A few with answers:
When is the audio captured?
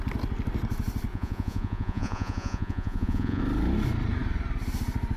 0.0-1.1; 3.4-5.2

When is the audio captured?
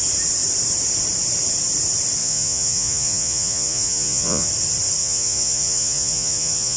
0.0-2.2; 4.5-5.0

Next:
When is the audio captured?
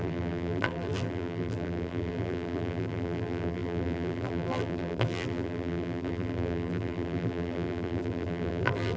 none